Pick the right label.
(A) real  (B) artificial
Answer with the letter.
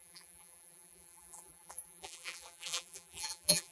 B